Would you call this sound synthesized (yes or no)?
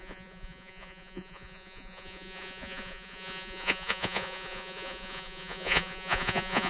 yes